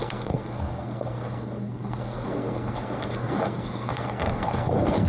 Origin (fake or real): fake